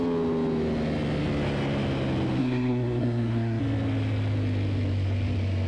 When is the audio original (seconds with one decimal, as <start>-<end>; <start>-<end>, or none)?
0.0-2.4; 3.6-5.7